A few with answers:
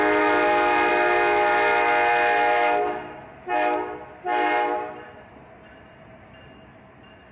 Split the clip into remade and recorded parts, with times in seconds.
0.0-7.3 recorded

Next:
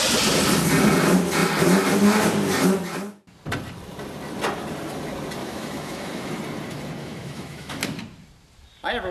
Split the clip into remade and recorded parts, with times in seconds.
0.0-5.4 recorded; 5.4-6.3 remade; 6.3-7.0 recorded; 7.0-7.8 remade; 7.8-9.1 recorded

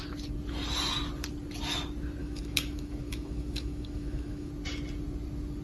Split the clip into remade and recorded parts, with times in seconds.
0.0-2.2 recorded; 2.2-4.5 remade; 4.5-5.6 recorded

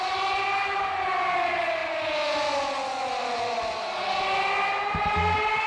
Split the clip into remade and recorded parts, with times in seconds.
0.0-5.7 recorded

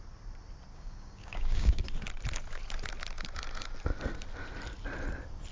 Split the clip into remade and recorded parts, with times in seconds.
0.0-0.7 recorded; 0.7-1.8 remade; 1.8-5.5 recorded

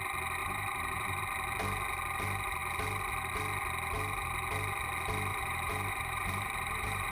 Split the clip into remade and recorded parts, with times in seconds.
0.0-0.4 recorded; 0.4-1.2 remade; 1.2-5.3 recorded; 5.3-7.1 remade